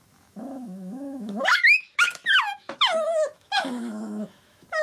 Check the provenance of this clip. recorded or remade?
remade